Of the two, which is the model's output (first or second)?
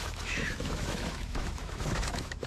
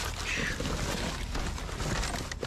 first